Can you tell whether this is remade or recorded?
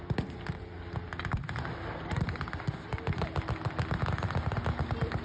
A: recorded